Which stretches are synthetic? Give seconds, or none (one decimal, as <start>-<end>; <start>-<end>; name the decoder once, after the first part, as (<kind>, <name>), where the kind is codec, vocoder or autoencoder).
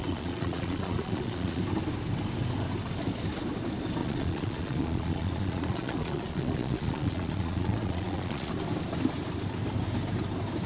0.0-1.6 (vocoder, Vocos); 4.0-8.5